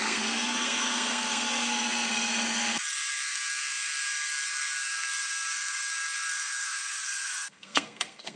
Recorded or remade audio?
remade